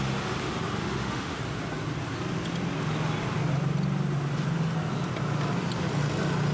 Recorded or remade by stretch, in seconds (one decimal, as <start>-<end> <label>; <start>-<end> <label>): 0.0-0.8 recorded; 0.8-1.4 remade; 1.4-6.5 recorded